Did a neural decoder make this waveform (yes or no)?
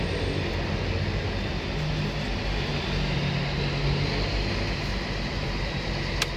no